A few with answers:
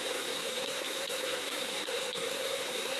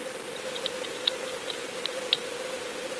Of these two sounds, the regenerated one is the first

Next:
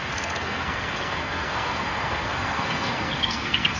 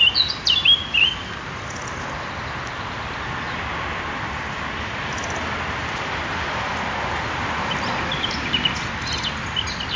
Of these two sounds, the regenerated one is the first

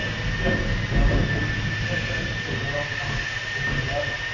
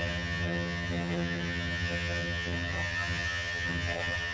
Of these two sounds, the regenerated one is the second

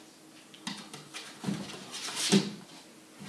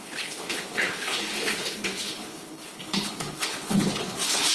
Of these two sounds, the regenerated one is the second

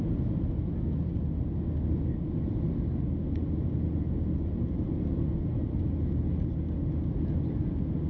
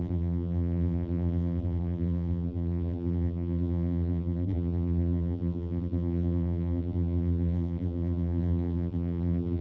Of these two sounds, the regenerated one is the second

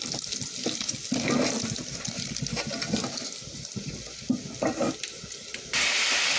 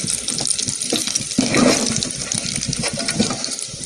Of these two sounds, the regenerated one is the second